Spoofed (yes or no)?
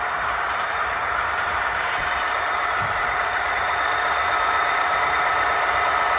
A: yes